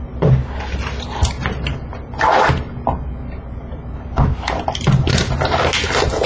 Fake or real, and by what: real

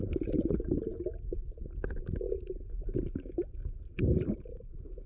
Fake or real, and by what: real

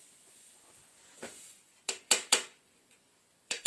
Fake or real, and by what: fake, vocoder, Vocos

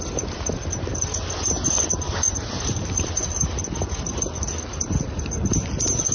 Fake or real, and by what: real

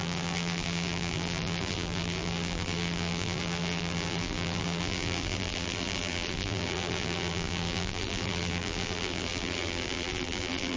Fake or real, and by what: fake, vocoder, BigVGAN v2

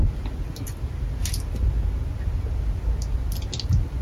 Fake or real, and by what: real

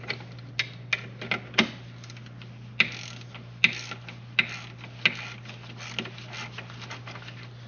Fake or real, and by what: real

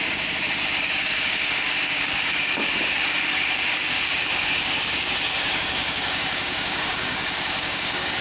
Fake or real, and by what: fake, codec, DAC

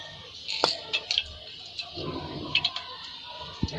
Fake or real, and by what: real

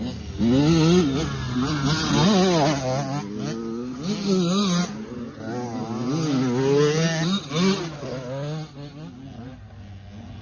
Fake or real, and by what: real